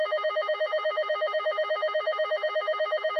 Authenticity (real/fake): fake